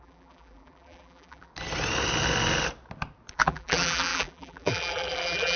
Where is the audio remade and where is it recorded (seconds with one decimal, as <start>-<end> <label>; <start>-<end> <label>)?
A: 0.0-1.5 remade; 1.5-3.3 recorded; 3.3-5.6 remade